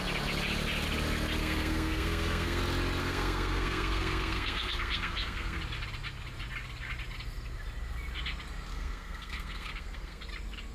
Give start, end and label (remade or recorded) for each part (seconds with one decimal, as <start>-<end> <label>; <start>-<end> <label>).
0.0-1.4 recorded; 1.4-2.6 remade; 2.6-3.0 recorded; 3.0-5.6 remade; 5.6-8.7 recorded; 8.7-10.2 remade; 10.2-10.7 recorded